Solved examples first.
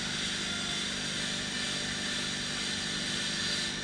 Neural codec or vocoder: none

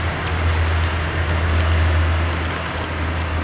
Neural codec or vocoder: none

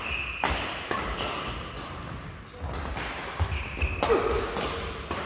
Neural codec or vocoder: none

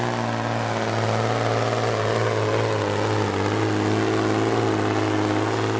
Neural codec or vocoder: none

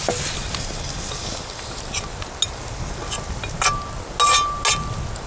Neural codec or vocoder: none